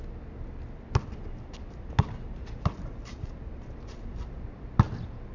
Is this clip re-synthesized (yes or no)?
no